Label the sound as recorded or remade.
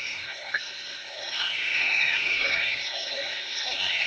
remade